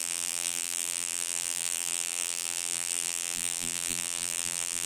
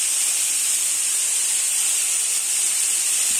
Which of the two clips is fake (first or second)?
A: first